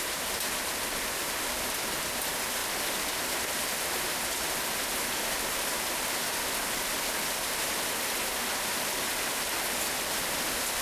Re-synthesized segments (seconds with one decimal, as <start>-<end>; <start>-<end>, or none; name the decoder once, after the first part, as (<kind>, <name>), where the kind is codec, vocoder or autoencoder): none